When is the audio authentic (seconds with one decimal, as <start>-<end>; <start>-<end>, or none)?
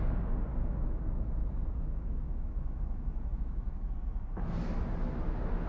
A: 0.0-0.5; 3.9-5.7